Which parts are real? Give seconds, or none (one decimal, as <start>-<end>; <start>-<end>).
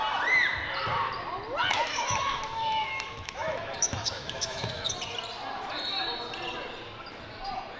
0.0-1.7; 5.0-7.8